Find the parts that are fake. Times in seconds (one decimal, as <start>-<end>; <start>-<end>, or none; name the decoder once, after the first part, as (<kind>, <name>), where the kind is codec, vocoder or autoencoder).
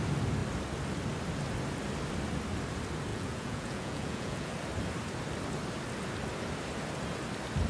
3.1-4.5 (vocoder, Vocos)